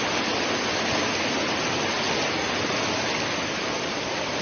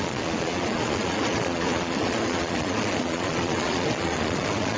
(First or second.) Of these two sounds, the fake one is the second